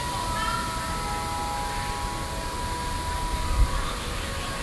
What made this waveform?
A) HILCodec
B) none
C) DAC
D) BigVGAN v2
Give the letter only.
B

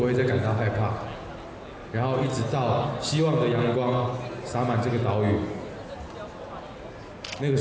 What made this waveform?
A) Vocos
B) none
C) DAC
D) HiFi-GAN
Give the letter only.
B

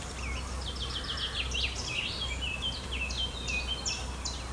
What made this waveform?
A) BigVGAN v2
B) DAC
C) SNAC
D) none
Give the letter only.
D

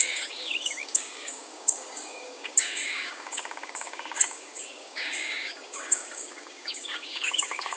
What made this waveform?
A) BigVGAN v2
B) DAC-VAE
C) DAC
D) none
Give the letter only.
C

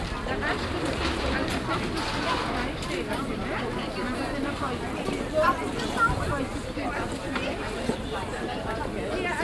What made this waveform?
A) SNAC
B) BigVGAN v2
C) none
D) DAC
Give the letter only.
C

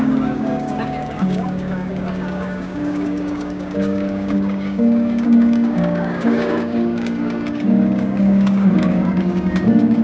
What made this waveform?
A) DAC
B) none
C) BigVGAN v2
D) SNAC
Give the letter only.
A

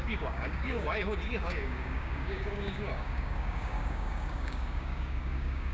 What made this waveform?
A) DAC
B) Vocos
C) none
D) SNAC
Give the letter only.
A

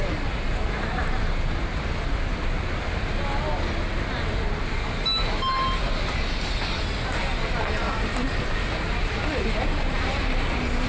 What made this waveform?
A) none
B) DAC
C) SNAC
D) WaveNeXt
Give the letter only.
A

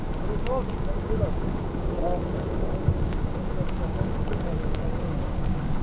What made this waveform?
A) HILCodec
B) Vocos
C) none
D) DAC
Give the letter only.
D